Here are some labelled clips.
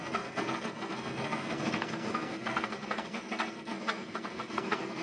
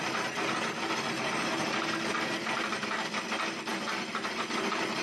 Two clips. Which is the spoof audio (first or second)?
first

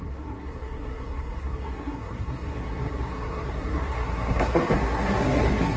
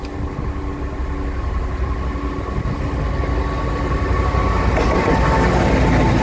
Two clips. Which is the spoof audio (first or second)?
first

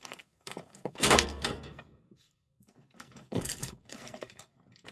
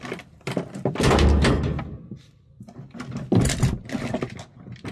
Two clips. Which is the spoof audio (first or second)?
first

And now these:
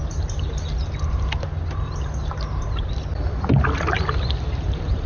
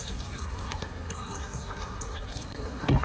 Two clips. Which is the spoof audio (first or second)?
second